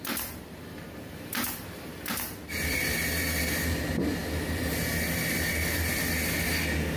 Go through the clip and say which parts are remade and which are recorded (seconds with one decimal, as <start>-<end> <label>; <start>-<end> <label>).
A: 0.0-7.0 recorded